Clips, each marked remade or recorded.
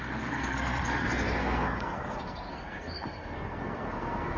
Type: remade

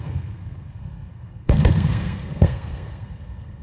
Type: remade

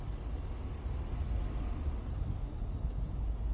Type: recorded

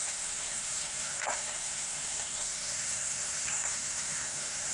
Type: remade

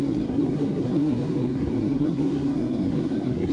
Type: remade